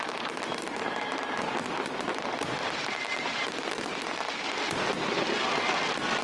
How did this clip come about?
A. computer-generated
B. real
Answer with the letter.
B